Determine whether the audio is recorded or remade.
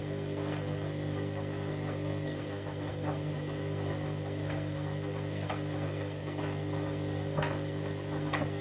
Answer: remade